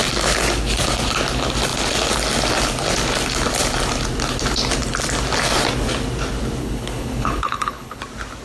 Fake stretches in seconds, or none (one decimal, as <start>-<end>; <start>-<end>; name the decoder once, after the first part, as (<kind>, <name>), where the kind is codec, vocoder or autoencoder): 6.6-8.0 (codec, HILCodec)